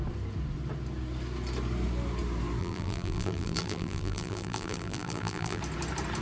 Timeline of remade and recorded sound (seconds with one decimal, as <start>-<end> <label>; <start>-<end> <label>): 0.0-2.6 recorded; 2.6-5.6 remade; 5.6-6.2 recorded